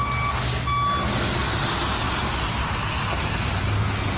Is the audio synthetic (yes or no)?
no